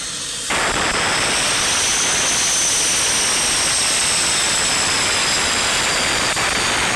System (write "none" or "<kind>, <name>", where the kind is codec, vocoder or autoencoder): none